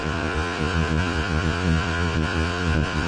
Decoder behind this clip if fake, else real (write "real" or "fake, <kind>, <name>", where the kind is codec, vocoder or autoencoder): fake, vocoder, Vocos